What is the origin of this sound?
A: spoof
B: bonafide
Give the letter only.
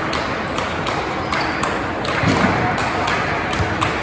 B